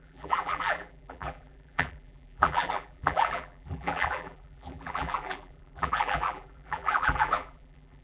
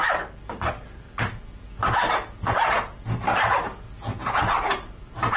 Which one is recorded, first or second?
second